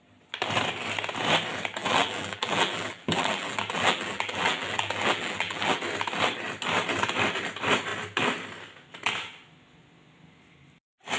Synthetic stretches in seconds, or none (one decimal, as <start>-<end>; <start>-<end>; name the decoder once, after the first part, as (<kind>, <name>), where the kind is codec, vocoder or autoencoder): 1.8-5.8 (vocoder, BigVGAN v2)